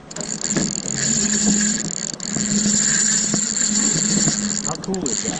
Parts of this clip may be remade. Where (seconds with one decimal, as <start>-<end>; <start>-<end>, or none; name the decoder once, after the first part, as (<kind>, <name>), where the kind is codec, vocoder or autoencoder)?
none